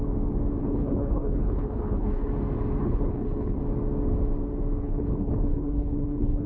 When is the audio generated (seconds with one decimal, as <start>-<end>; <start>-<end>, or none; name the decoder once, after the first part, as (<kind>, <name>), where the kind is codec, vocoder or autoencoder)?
0.6-2.3 (codec, HILCodec); 2.8-3.6; 4.8-6.5